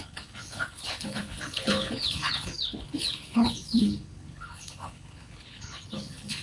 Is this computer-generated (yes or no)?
yes